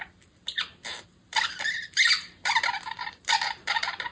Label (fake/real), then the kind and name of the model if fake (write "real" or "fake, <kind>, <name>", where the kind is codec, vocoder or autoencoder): fake, vocoder, BigVGAN v2